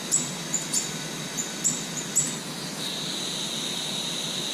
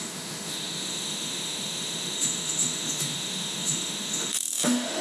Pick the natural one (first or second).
first